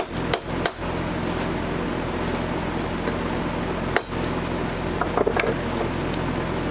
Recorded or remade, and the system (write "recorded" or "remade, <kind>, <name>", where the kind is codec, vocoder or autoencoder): recorded